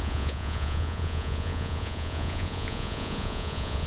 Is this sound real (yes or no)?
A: no